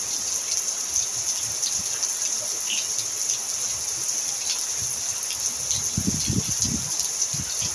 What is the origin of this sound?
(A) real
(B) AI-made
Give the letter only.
A